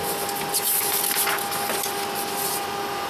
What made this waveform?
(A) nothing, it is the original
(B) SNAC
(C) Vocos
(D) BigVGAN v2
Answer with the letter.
A